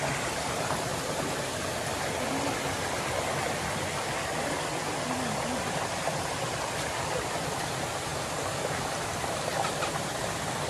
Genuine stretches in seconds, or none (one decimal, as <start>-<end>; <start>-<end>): 0.9-5.6